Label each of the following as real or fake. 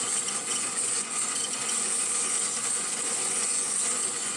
fake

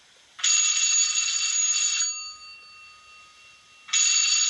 real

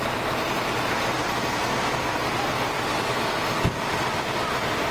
real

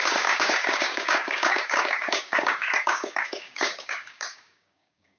fake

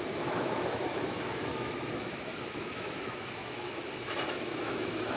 fake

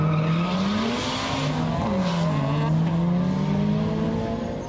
real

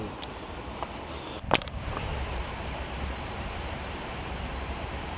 fake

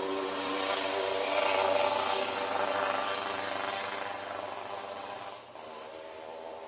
real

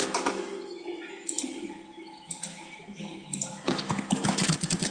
fake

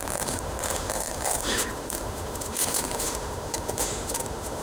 fake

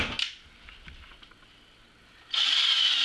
real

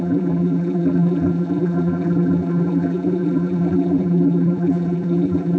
fake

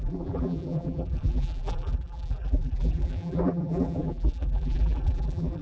fake